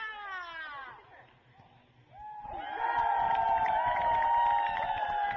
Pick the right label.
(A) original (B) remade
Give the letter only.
A